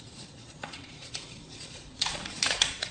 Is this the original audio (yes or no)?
no